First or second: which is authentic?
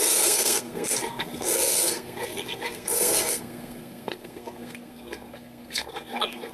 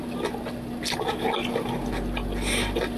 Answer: second